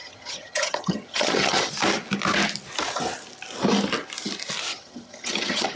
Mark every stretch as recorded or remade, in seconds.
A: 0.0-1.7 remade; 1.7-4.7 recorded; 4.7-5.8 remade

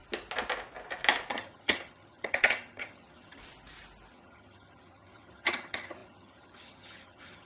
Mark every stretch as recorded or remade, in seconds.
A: 0.0-1.3 recorded; 1.3-3.4 remade; 3.4-4.1 recorded; 4.1-7.5 remade

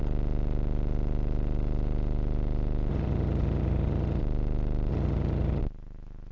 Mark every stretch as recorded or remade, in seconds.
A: 0.0-2.9 recorded; 2.9-4.2 remade; 4.2-4.9 recorded; 4.9-5.6 remade; 5.6-6.3 recorded